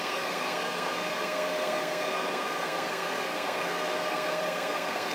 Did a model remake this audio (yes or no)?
yes